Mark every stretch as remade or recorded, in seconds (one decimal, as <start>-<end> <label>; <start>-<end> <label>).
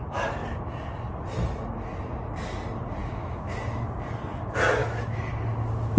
0.0-3.0 recorded; 3.0-3.5 remade; 3.5-4.8 recorded; 4.8-5.3 remade; 5.3-6.0 recorded